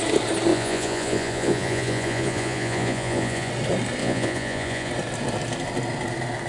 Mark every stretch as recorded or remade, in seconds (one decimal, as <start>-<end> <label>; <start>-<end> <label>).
0.0-0.5 recorded; 0.5-3.5 remade; 3.5-4.0 recorded; 4.0-4.9 remade; 4.9-6.5 recorded